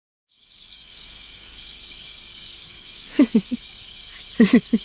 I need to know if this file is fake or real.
fake